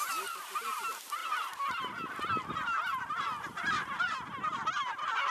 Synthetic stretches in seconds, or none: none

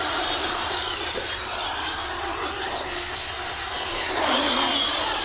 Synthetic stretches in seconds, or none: 0.0-2.0 (vocoder, BigVGAN v2); 3.6-5.2

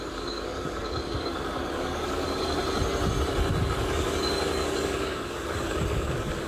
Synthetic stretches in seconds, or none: 0.0-2.6 (codec, DAC); 3.6-6.5

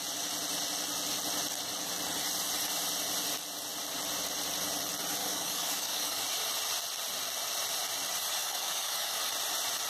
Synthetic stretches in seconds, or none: 5.2-6.2 (codec, DAC); 8.4-9.2